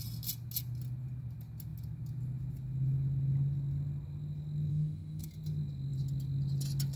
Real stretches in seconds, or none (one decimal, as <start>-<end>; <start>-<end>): 0.0-4.7; 5.3-7.0